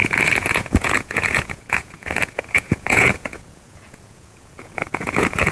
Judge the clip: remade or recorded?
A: remade